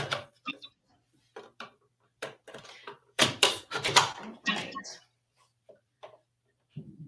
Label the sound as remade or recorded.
remade